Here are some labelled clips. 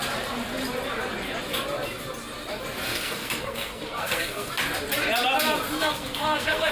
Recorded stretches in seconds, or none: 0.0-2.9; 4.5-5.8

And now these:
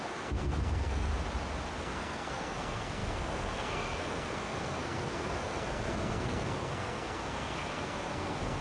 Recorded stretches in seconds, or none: 1.1-1.8

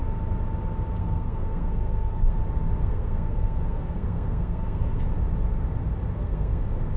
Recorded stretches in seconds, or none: 0.0-1.0; 2.4-2.8; 5.0-6.1; 6.6-7.0